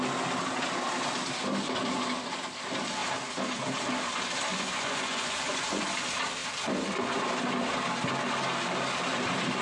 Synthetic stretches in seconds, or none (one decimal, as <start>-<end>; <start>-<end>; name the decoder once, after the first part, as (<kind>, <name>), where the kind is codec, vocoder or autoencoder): 4.5-5.8 (vocoder, Vocos)

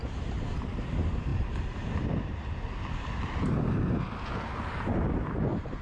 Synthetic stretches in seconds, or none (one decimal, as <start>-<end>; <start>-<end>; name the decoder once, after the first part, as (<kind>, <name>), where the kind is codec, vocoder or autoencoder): none

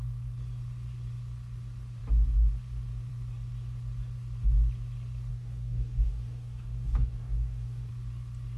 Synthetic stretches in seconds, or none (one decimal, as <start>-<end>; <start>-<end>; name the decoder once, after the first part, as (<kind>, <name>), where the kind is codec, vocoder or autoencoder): 5.3-7.9 (codec, DAC)

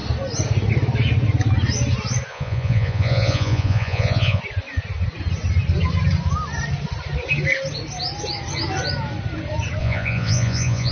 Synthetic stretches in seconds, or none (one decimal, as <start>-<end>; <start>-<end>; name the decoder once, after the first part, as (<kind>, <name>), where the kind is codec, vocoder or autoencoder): 2.3-4.4 (vocoder, Vocos); 9.8-10.9

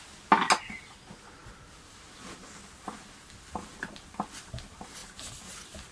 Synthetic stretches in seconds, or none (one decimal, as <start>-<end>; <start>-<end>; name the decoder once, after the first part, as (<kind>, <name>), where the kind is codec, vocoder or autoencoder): none

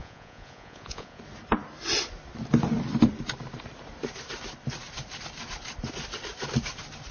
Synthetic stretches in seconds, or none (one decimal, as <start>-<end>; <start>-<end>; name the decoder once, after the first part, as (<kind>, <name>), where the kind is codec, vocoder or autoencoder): 0.0-1.2 (vocoder, Vocos)